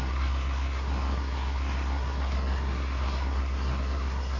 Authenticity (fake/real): fake